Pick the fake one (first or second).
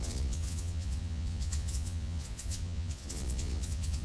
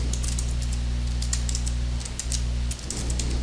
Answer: first